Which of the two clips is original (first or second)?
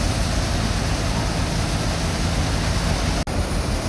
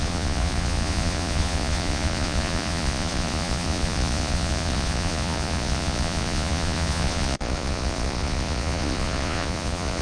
first